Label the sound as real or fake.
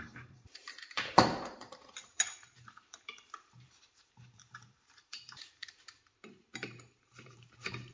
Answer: fake